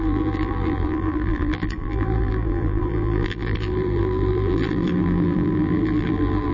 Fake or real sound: fake